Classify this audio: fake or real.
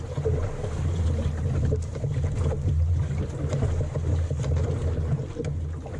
real